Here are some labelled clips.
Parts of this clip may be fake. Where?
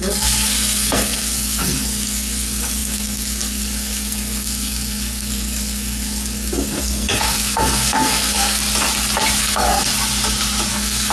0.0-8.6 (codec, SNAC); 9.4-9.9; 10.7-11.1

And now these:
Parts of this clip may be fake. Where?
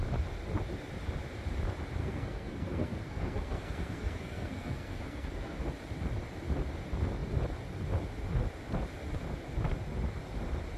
2.0-5.6 (codec, SNAC)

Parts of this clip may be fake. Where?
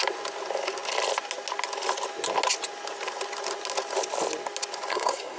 4.9-5.4 (codec, SNAC)